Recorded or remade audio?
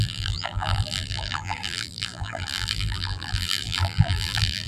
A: remade